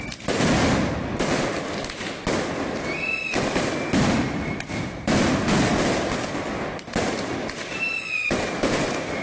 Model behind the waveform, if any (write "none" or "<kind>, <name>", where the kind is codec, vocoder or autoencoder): none